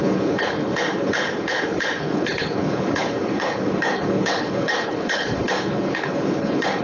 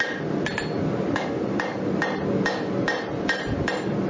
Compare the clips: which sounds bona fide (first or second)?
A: second